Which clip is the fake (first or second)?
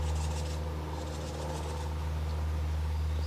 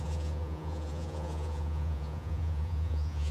second